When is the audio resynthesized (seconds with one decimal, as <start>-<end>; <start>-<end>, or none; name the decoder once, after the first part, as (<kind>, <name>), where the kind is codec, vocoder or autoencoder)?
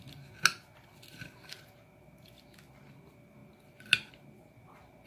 none